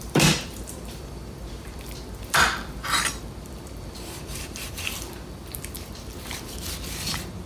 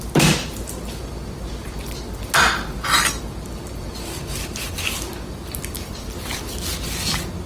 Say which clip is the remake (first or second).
first